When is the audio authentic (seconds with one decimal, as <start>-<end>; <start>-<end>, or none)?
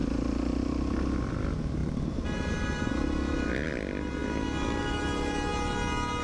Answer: 0.0-6.2